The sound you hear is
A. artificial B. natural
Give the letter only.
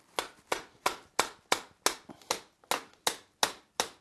B